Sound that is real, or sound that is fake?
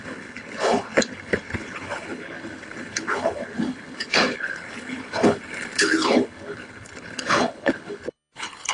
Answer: fake